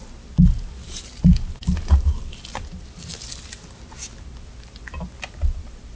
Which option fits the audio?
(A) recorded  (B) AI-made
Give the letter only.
A